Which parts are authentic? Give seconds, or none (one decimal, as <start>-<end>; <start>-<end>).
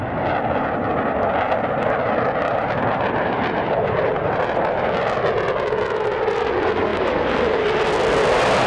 0.0-2.5; 4.4-8.7